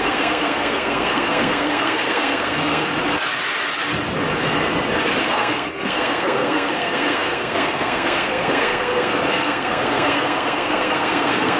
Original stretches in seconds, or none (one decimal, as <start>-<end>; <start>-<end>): 2.9-5.2